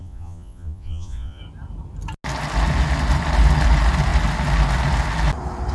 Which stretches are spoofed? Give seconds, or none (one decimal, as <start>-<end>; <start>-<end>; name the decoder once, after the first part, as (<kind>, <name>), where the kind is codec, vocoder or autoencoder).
0.0-1.4 (vocoder, Vocos)